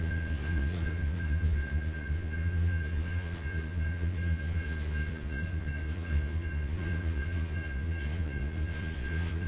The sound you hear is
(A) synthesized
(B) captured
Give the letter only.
A